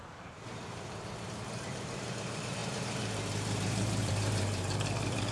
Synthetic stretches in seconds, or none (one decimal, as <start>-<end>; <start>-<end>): 0.0-5.3